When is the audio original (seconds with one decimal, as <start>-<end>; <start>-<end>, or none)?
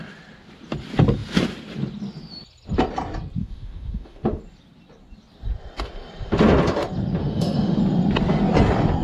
0.0-3.4; 4.4-7.2; 7.8-9.0